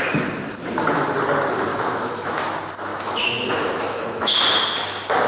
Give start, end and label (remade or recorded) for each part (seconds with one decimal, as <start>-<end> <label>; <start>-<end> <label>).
0.0-1.7 recorded; 1.7-2.4 remade; 2.4-2.9 recorded; 2.9-4.4 remade; 4.4-5.3 recorded